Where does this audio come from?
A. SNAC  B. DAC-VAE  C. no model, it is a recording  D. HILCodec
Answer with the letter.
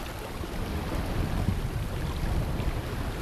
C